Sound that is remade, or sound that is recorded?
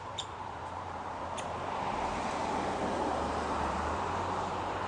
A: remade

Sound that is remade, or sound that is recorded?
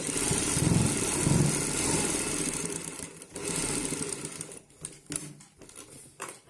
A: recorded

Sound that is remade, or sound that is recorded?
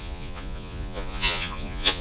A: remade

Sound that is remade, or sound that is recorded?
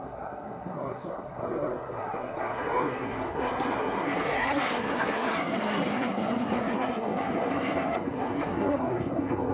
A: remade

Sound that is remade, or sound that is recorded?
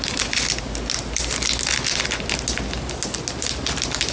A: recorded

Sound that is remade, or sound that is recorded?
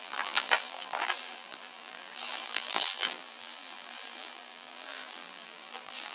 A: remade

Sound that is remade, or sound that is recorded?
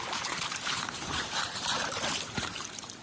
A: recorded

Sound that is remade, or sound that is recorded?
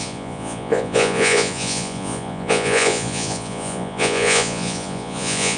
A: remade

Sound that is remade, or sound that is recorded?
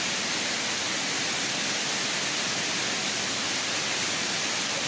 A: recorded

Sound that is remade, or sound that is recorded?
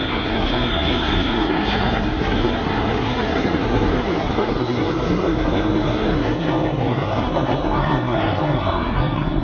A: remade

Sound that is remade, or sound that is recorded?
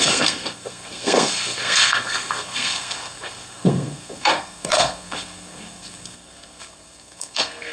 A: remade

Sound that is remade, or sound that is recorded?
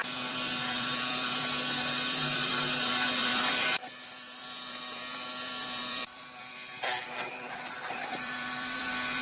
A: remade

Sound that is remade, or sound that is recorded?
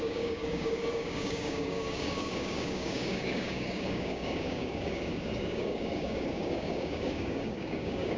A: remade